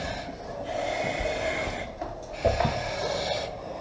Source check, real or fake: real